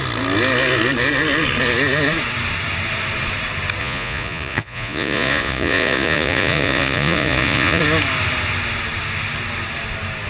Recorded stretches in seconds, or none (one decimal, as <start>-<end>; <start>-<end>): 0.0-3.8; 7.8-10.3